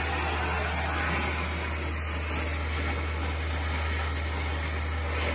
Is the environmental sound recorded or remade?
recorded